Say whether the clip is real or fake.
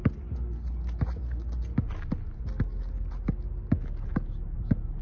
real